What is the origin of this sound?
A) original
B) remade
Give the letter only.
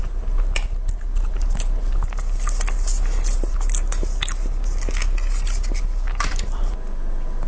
A